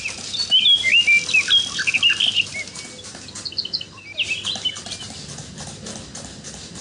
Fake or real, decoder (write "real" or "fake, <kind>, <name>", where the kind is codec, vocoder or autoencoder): real